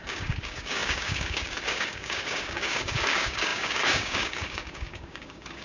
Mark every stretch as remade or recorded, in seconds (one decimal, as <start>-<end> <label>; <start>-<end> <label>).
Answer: 0.0-5.6 remade

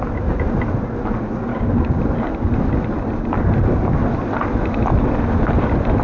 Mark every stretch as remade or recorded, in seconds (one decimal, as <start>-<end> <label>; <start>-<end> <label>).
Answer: 0.0-1.5 recorded; 1.5-2.0 remade; 2.0-6.0 recorded

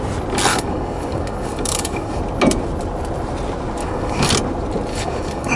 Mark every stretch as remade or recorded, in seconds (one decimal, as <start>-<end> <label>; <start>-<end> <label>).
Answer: 0.0-0.5 recorded; 0.5-2.2 remade; 2.2-3.8 recorded; 3.8-4.3 remade; 4.3-4.9 recorded; 4.9-5.6 remade

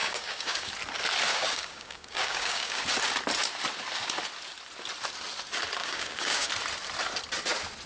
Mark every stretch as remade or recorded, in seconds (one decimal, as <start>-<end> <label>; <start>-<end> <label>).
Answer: 0.0-0.7 remade; 0.7-1.3 recorded; 1.3-2.8 remade; 2.8-5.8 recorded; 5.8-6.5 remade; 6.5-7.9 recorded

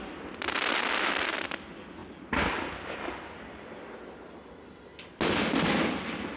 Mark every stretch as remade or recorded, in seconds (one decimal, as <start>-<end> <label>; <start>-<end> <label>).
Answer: 0.0-6.4 recorded

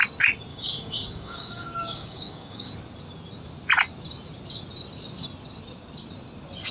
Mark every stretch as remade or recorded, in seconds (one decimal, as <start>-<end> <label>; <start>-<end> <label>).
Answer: 0.0-0.5 recorded; 0.5-2.7 remade; 2.7-6.7 recorded

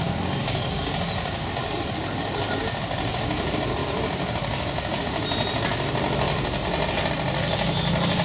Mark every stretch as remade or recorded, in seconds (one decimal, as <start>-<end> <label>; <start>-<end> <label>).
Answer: 0.0-8.2 recorded